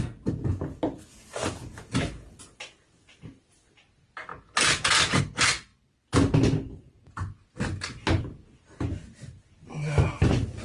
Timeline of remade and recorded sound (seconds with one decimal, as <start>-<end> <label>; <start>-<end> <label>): 0.0-10.6 recorded